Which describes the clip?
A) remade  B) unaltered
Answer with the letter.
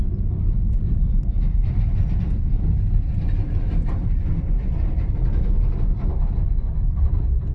B